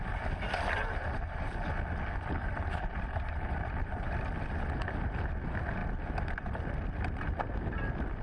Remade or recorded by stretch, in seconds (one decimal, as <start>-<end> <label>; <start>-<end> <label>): 0.0-0.9 recorded; 0.9-1.5 remade; 1.5-2.4 recorded; 2.4-3.9 remade; 3.9-8.2 recorded